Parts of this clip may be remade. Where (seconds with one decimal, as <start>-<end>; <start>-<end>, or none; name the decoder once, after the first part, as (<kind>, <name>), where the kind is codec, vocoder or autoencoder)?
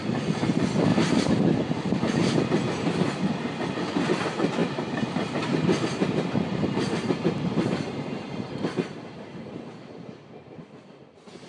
0.9-2.0 (vocoder, BigVGAN v2); 4.6-8.5